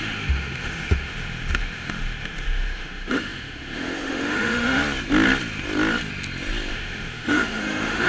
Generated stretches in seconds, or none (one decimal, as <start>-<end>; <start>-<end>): 0.0-4.8; 6.7-8.1